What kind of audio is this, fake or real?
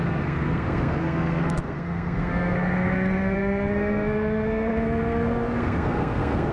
fake